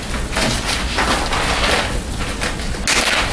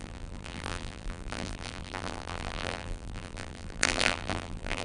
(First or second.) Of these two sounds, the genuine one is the first